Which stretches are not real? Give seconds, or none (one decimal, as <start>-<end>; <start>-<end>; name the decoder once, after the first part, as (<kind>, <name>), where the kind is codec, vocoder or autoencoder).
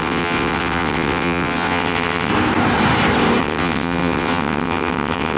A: 0.0-2.3 (vocoder, WaveNeXt); 3.4-5.4